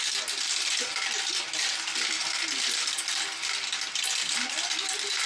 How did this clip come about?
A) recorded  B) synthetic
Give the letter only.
A